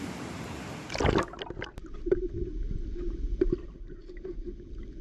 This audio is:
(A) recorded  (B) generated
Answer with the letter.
A